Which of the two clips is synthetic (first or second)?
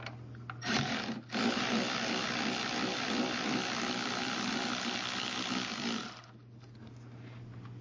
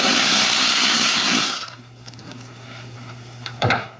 second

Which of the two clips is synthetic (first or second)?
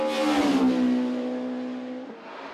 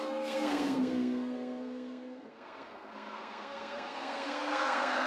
second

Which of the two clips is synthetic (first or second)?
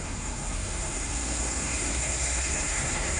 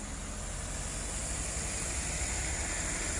first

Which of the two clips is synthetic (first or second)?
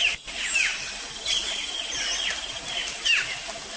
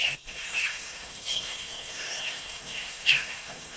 second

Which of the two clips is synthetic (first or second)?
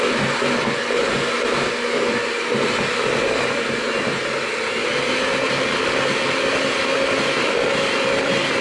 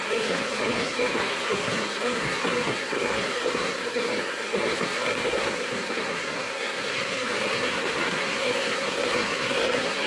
second